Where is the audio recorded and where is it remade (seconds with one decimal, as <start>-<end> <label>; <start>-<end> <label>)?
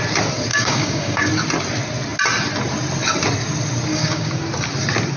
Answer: 0.0-0.5 recorded; 0.5-1.3 remade; 1.3-3.9 recorded; 3.9-4.4 remade; 4.4-5.2 recorded